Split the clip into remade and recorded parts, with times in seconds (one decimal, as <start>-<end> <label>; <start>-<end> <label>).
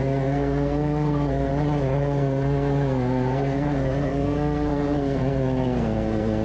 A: 0.0-1.5 remade; 1.5-2.0 recorded; 2.0-6.4 remade